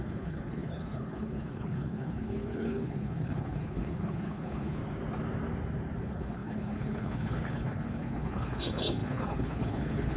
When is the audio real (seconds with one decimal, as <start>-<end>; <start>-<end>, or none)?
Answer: 4.8-6.0